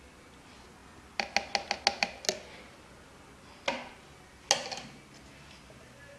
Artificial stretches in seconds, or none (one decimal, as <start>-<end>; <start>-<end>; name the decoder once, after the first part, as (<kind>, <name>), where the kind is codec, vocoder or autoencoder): none